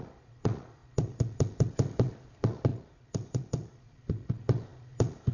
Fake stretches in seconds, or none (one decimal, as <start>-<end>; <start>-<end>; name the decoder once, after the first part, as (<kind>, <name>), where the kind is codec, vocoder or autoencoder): 0.0-5.3 (vocoder, Vocos)